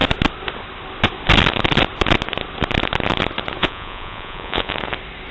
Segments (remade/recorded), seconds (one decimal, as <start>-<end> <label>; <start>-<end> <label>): 0.0-3.6 recorded; 3.6-4.7 remade; 4.7-5.3 recorded